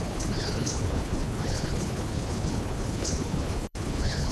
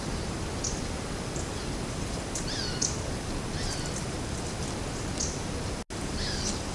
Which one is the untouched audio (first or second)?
second